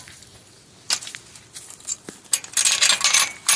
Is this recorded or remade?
recorded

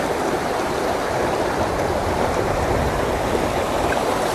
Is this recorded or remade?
remade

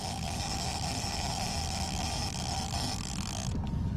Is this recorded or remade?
recorded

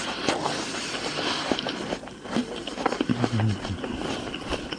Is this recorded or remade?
recorded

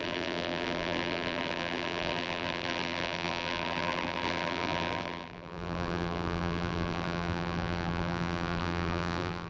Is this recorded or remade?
remade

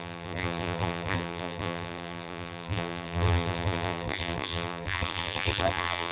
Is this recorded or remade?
remade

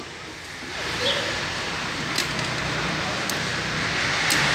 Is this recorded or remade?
recorded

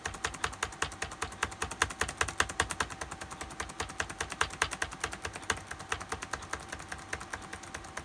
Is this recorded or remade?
recorded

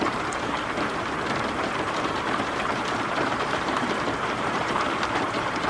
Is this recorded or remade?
remade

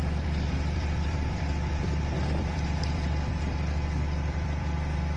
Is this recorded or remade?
remade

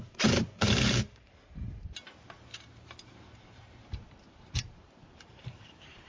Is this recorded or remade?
remade